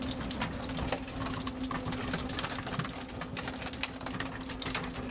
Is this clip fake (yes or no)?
no